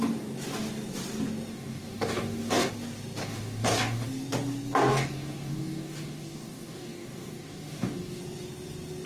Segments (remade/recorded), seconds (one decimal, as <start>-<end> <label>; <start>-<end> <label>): 0.0-1.5 recorded; 1.5-2.7 remade; 2.7-3.2 recorded; 3.2-4.1 remade; 4.1-4.9 recorded; 4.9-8.2 remade; 8.2-9.1 recorded